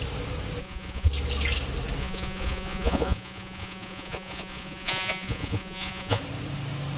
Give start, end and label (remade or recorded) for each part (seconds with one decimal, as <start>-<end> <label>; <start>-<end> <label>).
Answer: 0.0-0.6 recorded; 0.6-1.1 remade; 1.1-2.0 recorded; 2.0-6.2 remade; 6.2-7.0 recorded